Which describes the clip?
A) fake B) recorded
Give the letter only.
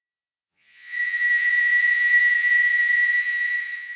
A